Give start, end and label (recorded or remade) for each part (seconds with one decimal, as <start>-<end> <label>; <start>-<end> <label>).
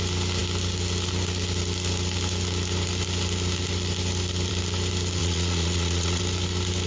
0.0-5.2 recorded; 5.2-6.2 remade; 6.2-6.9 recorded